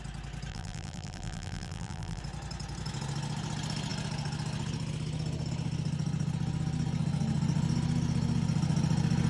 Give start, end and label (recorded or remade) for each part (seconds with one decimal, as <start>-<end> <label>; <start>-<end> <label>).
0.0-0.5 recorded; 0.5-2.2 remade; 2.2-9.3 recorded

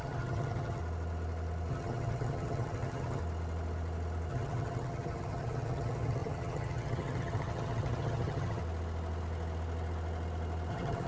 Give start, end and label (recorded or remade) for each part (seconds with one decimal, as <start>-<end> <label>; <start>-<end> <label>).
0.0-0.8 remade; 0.8-1.7 recorded; 1.7-3.2 remade; 3.2-4.3 recorded; 4.3-8.6 remade; 8.6-10.7 recorded; 10.7-11.1 remade

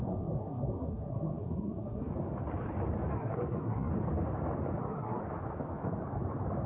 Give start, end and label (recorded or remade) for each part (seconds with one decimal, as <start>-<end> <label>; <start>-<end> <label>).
0.0-2.1 remade; 2.1-3.1 recorded; 3.1-3.9 remade; 3.9-4.8 recorded; 4.8-5.2 remade; 5.2-6.7 recorded

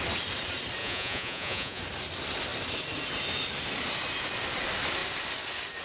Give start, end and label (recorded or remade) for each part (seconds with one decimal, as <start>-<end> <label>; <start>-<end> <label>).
0.0-0.8 recorded; 0.8-1.8 remade; 1.8-5.8 recorded

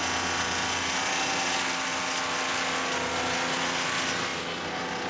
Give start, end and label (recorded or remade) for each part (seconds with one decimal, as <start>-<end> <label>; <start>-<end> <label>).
0.0-5.1 recorded

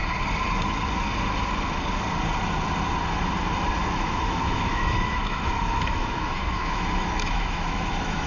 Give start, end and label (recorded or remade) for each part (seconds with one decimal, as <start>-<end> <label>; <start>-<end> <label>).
0.0-3.8 recorded; 3.8-8.3 remade

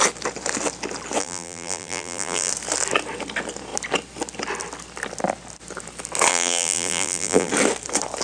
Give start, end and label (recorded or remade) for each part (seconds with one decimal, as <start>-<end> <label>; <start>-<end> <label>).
0.0-1.2 recorded; 1.2-2.5 remade; 2.5-6.3 recorded; 6.3-7.5 remade; 7.5-8.2 recorded